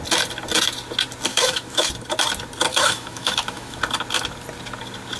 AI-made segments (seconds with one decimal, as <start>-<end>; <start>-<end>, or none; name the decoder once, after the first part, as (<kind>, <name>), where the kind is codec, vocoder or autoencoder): 1.3-1.9 (autoencoder, DAC-VAE); 2.7-3.8